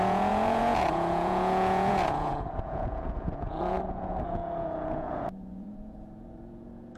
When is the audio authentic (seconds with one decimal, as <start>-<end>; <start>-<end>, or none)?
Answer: none